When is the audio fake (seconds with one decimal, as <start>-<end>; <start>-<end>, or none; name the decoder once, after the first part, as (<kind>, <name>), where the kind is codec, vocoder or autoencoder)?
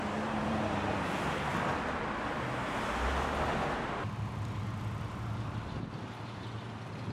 0.4-1.5 (vocoder, BigVGAN v2)